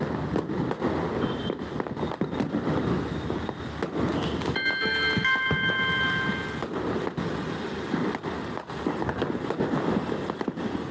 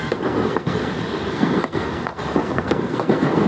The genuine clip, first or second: first